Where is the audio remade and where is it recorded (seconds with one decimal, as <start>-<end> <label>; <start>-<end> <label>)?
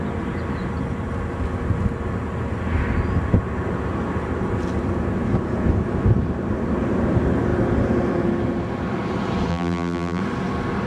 0.0-9.5 recorded; 9.5-10.2 remade; 10.2-10.9 recorded